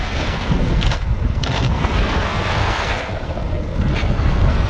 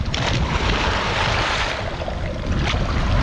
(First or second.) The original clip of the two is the second